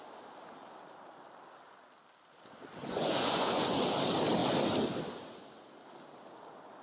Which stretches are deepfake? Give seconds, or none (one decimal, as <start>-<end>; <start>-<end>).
2.8-3.8